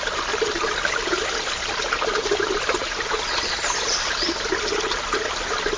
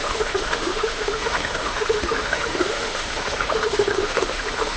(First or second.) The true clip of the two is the first